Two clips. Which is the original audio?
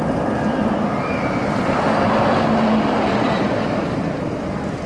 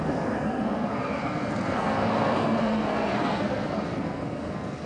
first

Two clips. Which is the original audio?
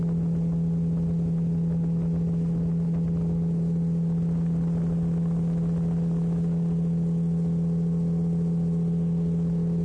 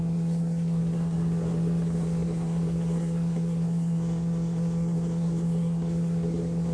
first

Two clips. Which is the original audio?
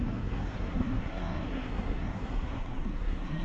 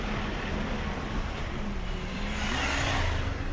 second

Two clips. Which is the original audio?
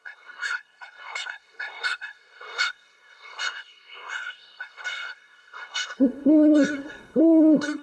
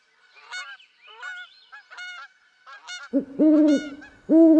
second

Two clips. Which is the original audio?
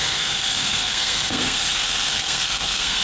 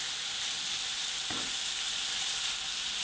second